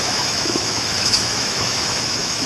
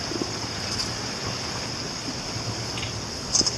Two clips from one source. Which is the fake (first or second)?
first